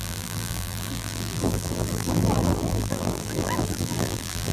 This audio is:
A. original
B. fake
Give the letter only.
B